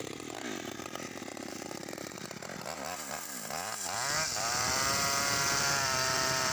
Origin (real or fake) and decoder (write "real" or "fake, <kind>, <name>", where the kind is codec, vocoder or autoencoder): real